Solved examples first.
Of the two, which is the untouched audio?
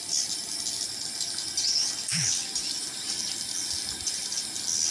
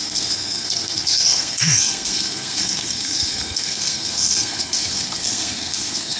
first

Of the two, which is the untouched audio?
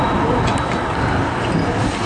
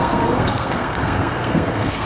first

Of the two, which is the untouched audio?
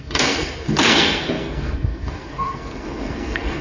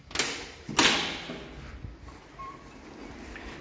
second